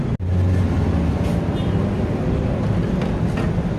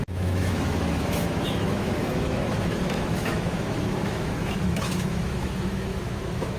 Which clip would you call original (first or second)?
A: first